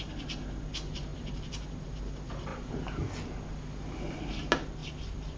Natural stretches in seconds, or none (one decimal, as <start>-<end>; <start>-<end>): 0.0-4.8